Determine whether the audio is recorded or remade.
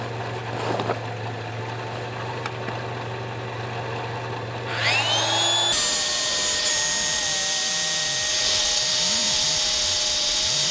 recorded